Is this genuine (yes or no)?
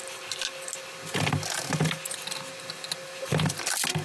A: yes